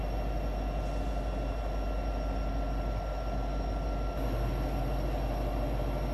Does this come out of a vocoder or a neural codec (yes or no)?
no